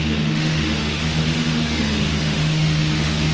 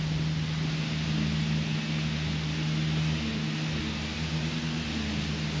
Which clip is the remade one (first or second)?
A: first